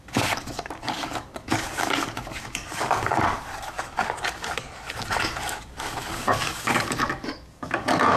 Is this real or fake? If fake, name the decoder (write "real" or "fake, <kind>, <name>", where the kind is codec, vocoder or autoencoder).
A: fake, codec, DAC